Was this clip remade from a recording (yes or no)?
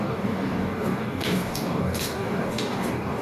yes